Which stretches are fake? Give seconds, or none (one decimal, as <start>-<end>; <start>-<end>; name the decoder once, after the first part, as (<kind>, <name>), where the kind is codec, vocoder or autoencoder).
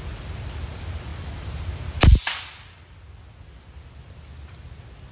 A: none